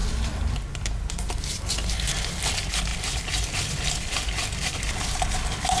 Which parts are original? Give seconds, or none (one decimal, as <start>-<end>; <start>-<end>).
0.5-5.8